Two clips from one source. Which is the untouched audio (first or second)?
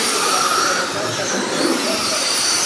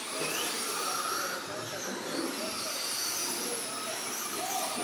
second